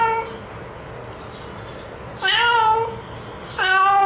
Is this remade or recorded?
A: recorded